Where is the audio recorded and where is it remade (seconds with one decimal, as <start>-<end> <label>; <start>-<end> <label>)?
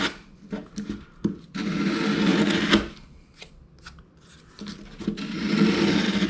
0.0-6.3 recorded